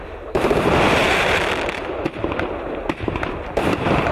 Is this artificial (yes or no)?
no